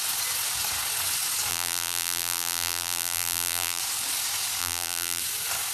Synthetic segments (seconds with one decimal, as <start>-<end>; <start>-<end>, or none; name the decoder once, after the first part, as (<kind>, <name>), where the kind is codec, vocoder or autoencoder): 1.5-3.8 (vocoder, BigVGAN v2); 4.6-5.2